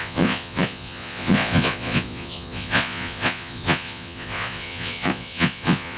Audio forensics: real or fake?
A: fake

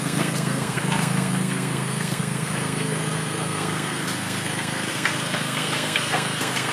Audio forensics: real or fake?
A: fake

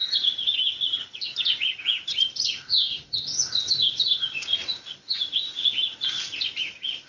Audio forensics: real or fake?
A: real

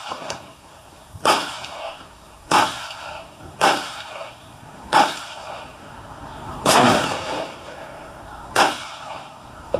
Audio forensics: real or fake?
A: fake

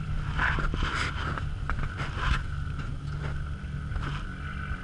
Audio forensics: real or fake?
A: real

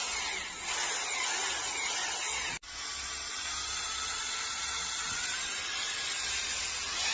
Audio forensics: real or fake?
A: real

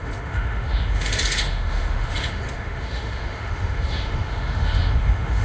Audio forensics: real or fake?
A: fake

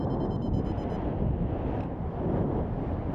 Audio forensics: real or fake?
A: real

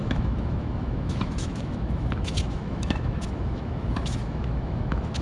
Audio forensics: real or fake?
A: fake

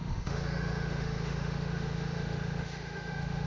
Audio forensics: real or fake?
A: fake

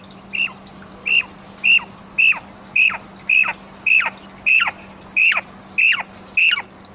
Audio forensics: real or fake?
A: real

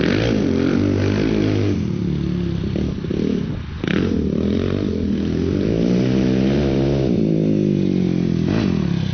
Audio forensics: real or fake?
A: real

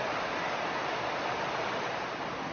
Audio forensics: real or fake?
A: real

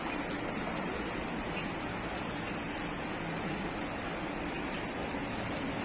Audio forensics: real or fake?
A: real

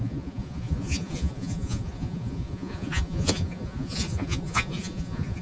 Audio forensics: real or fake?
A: fake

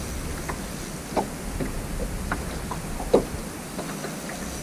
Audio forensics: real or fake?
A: real